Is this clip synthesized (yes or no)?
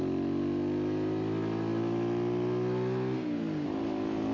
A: no